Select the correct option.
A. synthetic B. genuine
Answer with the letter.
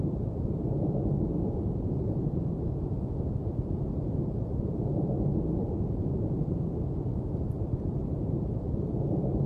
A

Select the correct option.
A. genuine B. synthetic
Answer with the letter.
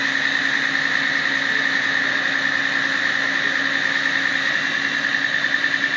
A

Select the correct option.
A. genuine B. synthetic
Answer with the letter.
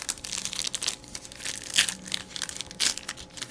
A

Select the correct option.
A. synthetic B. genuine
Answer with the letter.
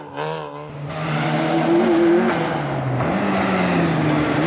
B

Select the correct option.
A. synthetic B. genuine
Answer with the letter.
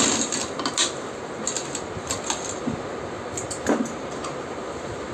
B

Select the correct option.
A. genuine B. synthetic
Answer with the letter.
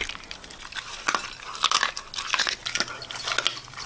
A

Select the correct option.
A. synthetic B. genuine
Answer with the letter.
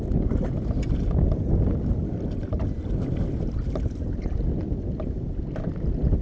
B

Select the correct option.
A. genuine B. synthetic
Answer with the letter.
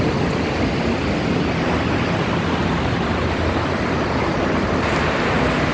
B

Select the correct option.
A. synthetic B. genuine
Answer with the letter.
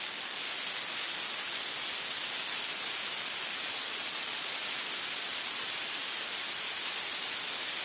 B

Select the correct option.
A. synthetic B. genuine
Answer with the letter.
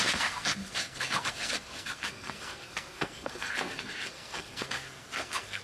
A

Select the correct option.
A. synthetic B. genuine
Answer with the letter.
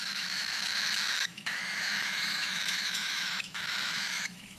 A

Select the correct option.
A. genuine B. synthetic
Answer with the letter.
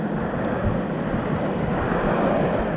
A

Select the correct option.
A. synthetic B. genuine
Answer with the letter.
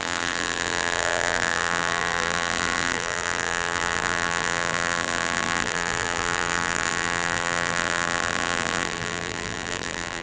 A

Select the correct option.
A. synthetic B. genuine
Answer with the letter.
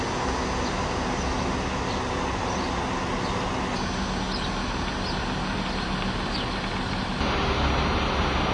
B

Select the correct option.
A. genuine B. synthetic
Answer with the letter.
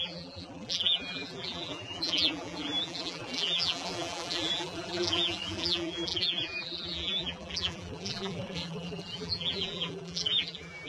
B